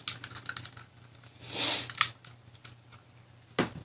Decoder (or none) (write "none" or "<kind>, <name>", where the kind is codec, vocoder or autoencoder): none